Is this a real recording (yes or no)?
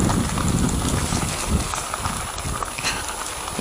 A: yes